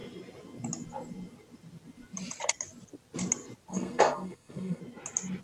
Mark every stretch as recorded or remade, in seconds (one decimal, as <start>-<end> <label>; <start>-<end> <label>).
0.0-3.7 recorded; 3.7-4.8 remade; 4.8-5.4 recorded